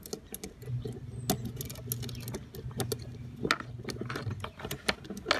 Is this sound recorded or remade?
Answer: recorded